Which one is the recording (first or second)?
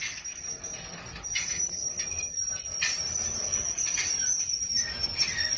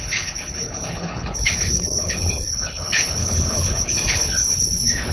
first